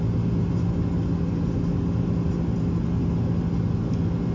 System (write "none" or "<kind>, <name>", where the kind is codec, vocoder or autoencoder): none